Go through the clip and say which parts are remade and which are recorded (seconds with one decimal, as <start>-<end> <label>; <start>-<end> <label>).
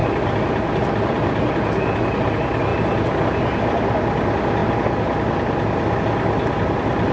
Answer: 0.0-7.1 recorded